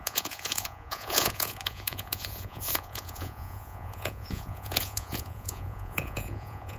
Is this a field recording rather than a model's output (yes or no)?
no